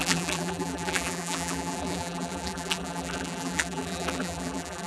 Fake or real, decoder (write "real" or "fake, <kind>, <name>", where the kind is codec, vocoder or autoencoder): fake, vocoder, BigVGAN v2